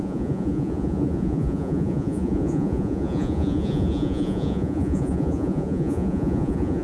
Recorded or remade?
remade